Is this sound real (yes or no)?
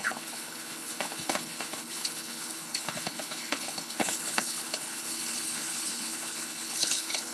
no